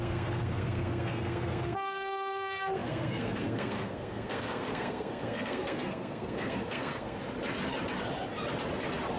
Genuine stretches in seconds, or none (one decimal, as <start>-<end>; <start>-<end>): 7.2-9.2